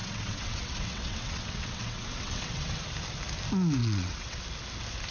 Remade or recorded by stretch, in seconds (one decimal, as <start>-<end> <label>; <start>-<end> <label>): 0.0-2.8 remade; 2.8-3.8 recorded; 3.8-4.4 remade; 4.4-5.1 recorded